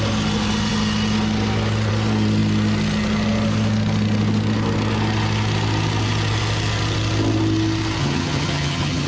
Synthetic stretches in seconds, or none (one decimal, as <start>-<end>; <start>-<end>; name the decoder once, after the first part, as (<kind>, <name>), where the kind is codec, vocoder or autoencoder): 8.0-9.1 (vocoder, HiFi-GAN)